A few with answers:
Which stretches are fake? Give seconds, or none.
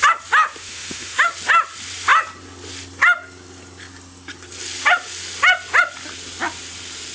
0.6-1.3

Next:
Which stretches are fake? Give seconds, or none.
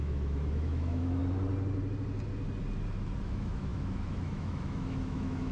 0.0-1.2; 3.2-5.5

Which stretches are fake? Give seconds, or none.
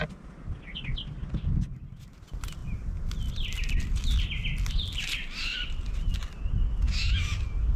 none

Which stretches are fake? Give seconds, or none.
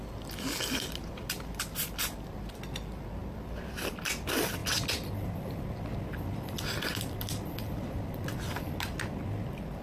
none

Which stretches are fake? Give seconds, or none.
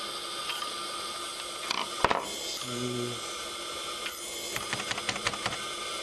none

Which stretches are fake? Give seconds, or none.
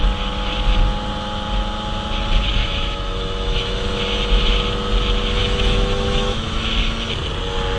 2.6-3.9; 5.4-6.7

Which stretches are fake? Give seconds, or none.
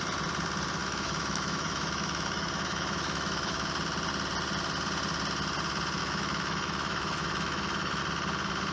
0.8-3.7; 6.0-8.0